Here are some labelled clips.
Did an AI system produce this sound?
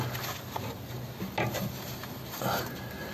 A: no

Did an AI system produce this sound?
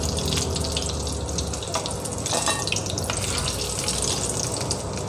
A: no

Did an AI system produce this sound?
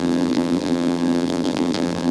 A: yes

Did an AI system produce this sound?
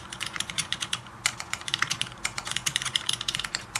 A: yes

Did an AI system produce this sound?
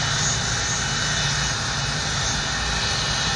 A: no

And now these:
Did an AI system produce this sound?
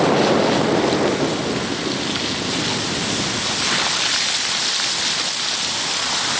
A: no